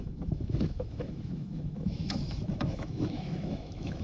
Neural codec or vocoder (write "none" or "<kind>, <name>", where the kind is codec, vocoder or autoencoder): autoencoder, DAC-VAE